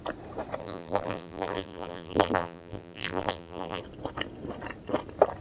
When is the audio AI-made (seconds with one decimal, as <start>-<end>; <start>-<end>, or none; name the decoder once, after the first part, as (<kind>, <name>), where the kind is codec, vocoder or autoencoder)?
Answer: 0.6-3.8 (vocoder, BigVGAN v2)

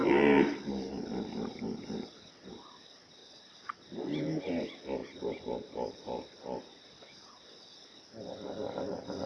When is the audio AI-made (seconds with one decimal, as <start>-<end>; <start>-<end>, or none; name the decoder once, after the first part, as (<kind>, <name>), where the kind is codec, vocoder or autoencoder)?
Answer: 0.0-0.7 (vocoder, BigVGAN v2); 3.2-4.4; 5.0-7.3

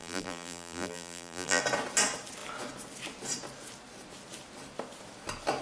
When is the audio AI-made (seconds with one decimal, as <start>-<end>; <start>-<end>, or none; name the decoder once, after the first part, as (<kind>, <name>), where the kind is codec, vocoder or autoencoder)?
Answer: 0.0-1.6 (vocoder, BigVGAN v2)

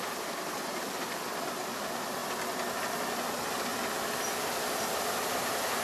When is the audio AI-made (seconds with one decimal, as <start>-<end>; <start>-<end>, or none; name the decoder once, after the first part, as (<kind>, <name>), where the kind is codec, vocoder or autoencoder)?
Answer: 0.7-1.2 (vocoder, BigVGAN v2)